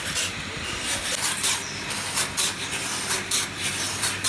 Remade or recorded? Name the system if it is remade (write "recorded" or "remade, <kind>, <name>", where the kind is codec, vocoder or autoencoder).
recorded